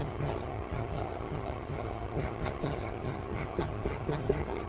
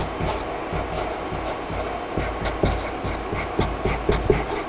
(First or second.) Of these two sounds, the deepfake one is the first